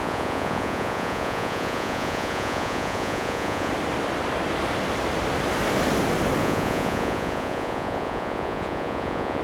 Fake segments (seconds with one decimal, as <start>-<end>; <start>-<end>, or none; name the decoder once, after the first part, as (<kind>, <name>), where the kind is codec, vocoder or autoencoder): 0.0-3.7 (vocoder, Vocos); 6.4-9.4